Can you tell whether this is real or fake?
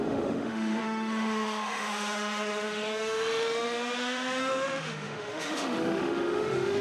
fake